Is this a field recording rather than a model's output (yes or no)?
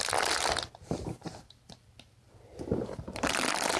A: no